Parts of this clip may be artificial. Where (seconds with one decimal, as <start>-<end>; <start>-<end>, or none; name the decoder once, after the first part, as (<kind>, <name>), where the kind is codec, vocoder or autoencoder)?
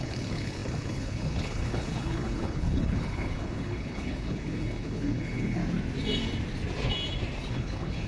0.0-5.6 (codec, HILCodec); 7.5-8.1